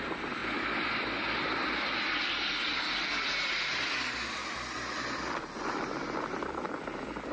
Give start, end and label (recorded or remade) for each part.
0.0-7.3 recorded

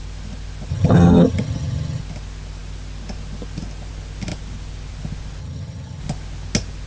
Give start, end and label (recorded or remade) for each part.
0.0-0.7 recorded; 0.7-2.0 remade; 2.0-5.4 recorded; 5.4-6.0 remade; 6.0-6.9 recorded